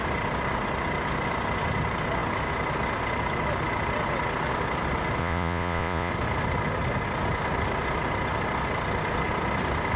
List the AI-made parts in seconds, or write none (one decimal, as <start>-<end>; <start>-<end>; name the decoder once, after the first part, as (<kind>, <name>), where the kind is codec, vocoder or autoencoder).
5.2-6.1 (vocoder, Vocos)